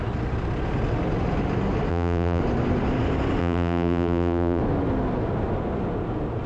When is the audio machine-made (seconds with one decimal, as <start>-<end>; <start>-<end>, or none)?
1.9-2.4; 3.4-4.6